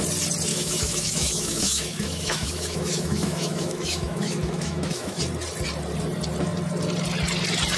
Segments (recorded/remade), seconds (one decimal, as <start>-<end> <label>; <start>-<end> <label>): 0.0-0.5 recorded; 0.5-5.2 remade; 5.2-7.8 recorded